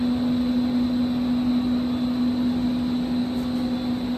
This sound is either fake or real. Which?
real